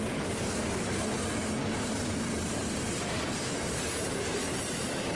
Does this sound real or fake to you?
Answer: real